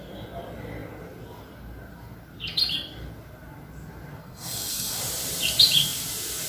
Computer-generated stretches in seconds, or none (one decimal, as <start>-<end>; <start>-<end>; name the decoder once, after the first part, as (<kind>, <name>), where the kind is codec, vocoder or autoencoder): 4.2-5.0 (codec, SNAC)